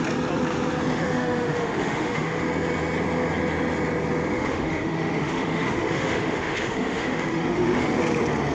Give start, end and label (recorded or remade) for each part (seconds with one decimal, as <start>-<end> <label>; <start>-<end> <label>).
0.0-0.9 recorded; 0.9-2.4 remade; 2.4-4.3 recorded; 4.3-8.0 remade; 8.0-8.5 recorded

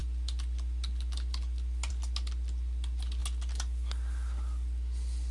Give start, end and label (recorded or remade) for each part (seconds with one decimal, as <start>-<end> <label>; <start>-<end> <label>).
0.0-5.3 recorded

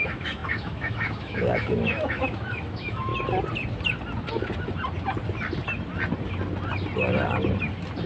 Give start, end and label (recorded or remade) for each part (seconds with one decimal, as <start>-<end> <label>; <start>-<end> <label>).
0.0-3.1 remade; 3.1-8.1 recorded

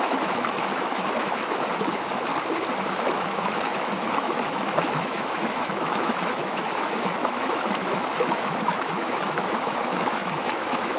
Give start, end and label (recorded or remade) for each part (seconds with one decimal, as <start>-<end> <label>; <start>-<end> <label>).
0.0-2.3 remade; 2.3-2.9 recorded; 2.9-11.0 remade

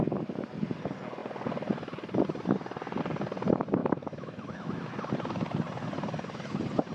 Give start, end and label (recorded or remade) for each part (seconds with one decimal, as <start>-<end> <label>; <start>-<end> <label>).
0.0-3.8 recorded; 3.8-4.9 remade; 4.9-6.9 recorded

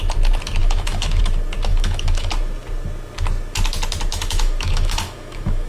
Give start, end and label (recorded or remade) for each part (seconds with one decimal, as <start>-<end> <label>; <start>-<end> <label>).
0.0-0.6 recorded; 0.6-1.2 remade; 1.2-1.7 recorded; 1.7-2.3 remade; 2.3-4.1 recorded; 4.1-5.7 remade

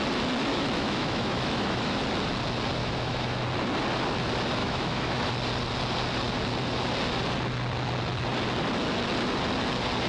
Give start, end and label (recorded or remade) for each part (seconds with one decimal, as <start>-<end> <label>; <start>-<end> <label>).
0.0-0.5 recorded; 0.5-2.0 remade; 2.0-2.8 recorded; 2.8-3.4 remade; 3.4-4.6 recorded; 4.6-5.3 remade; 5.3-10.1 recorded

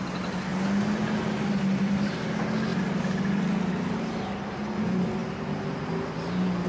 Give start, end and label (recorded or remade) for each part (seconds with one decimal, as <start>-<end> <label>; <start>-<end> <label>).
0.0-6.7 recorded